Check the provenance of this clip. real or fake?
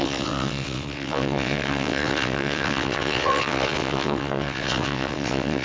fake